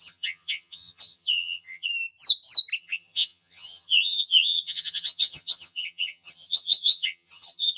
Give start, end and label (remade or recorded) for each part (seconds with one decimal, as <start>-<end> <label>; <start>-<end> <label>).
0.0-1.9 remade; 1.9-2.8 recorded; 2.8-7.8 remade